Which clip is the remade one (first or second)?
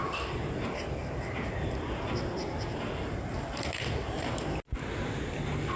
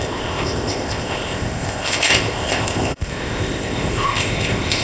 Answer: second